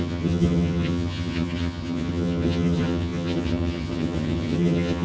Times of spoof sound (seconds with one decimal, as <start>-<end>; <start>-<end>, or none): 0.0-5.0